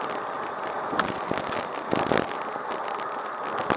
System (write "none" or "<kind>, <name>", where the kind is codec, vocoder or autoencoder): none